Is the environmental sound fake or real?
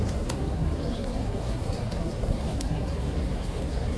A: fake